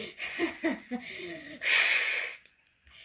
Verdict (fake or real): fake